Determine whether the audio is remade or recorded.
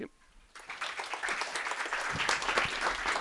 recorded